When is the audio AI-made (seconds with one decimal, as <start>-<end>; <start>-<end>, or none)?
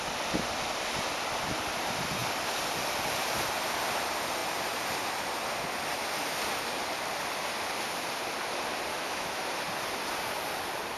8.9-9.4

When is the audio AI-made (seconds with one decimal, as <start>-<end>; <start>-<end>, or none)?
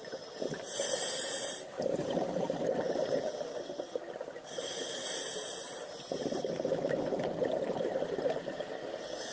0.0-2.9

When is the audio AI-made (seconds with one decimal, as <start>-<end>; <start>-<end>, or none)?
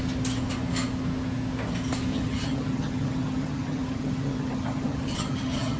2.1-5.8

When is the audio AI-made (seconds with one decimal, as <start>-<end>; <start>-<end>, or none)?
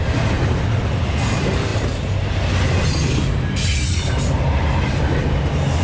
none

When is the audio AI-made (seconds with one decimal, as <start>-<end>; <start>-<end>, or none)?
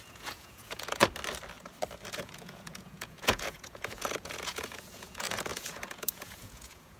0.0-1.0; 2.1-7.0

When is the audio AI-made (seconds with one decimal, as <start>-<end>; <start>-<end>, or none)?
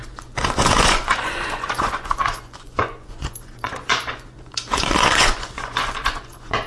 0.0-6.7